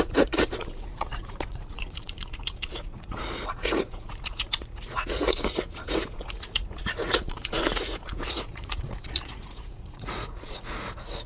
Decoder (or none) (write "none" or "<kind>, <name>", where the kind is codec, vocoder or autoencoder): vocoder, Vocos